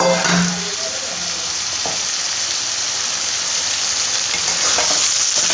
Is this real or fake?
real